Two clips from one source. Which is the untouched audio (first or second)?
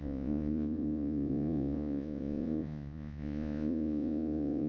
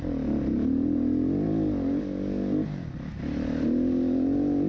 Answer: second